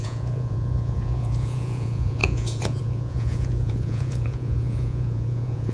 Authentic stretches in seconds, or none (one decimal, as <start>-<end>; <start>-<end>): none